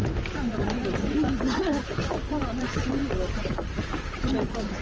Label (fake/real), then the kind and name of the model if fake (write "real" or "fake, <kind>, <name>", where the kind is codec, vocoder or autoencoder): fake, vocoder, BigVGAN v2